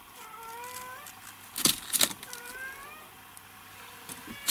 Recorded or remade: recorded